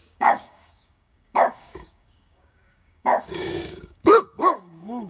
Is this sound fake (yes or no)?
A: yes